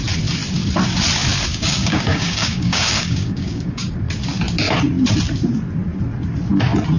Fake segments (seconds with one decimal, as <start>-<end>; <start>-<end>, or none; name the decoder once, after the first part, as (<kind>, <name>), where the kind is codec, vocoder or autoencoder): 1.5-3.9 (codec, DAC)